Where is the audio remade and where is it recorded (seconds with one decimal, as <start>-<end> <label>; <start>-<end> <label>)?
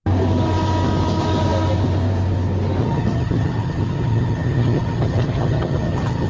0.0-2.8 recorded; 2.8-6.3 remade